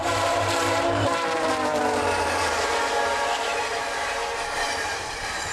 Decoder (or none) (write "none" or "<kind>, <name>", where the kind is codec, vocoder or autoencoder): vocoder, BigVGAN v2